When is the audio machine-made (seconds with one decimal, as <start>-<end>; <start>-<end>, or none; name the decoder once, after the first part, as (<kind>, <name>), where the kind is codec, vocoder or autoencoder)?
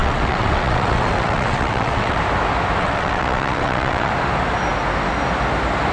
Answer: 0.0-2.2 (vocoder, WaveNeXt); 2.8-4.1